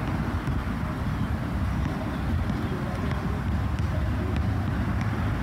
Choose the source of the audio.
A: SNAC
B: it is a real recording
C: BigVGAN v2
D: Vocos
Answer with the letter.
B